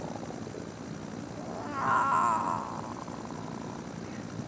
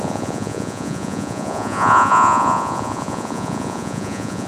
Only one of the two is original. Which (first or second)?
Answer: first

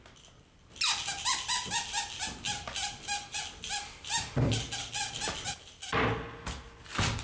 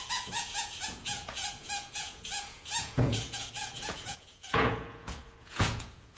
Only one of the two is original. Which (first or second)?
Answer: first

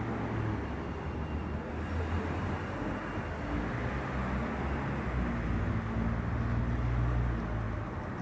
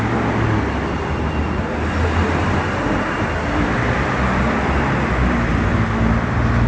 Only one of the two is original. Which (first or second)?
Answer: first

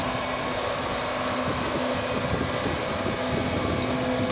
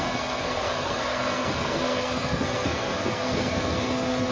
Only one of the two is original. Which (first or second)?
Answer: first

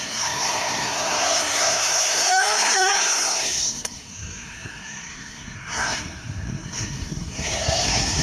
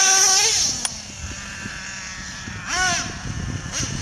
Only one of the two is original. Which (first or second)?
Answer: second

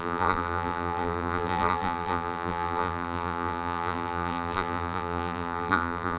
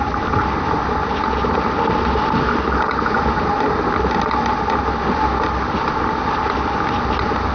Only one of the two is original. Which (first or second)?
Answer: second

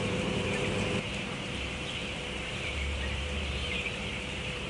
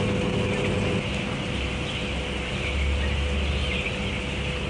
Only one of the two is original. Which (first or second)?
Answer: second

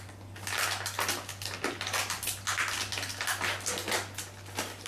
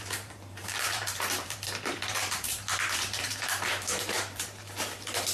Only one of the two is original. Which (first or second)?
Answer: first